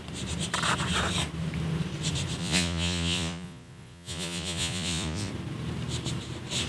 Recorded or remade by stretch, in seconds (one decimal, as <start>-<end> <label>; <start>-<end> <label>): 0.0-2.4 recorded; 2.4-5.3 remade; 5.3-6.7 recorded

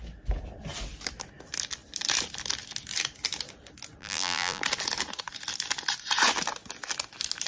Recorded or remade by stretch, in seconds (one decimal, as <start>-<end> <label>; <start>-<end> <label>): 0.0-4.0 recorded; 4.0-4.6 remade; 4.6-7.5 recorded

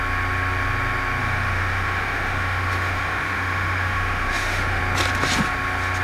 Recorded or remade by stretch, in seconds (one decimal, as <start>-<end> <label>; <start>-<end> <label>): 0.0-1.2 recorded; 1.2-4.8 remade; 4.8-6.0 recorded

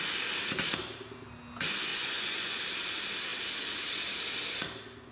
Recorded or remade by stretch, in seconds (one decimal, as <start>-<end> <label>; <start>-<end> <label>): 0.0-1.9 recorded; 1.9-2.6 remade; 2.6-5.1 recorded

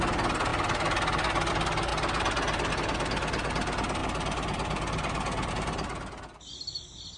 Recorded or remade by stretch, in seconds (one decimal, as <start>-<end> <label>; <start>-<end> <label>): 0.0-7.2 recorded

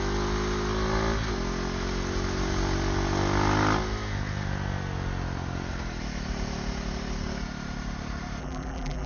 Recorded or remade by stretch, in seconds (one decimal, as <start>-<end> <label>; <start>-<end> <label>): 0.0-8.4 recorded; 8.4-9.1 remade

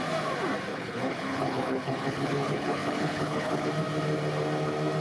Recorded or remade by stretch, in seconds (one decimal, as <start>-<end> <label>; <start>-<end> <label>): 0.0-0.7 recorded; 0.7-3.7 remade; 3.7-5.0 recorded

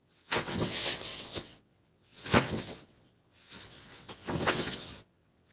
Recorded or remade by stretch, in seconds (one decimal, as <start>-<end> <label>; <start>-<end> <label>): 0.0-5.5 remade